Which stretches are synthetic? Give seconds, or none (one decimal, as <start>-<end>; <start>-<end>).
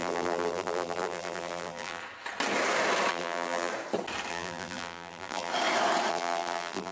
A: 0.0-2.0; 3.1-3.7; 4.3-5.5; 6.1-6.9